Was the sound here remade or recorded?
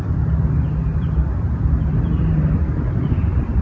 remade